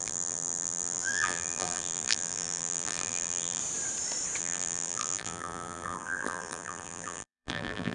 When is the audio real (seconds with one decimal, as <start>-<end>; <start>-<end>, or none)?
3.6-4.4